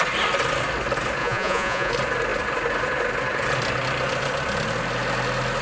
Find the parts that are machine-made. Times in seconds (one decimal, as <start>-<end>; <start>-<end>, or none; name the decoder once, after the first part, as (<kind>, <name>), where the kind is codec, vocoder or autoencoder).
1.2-1.9 (vocoder, Vocos)